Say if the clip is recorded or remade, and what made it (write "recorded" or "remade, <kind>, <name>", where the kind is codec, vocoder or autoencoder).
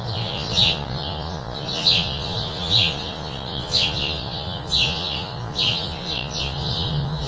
remade, vocoder, Vocos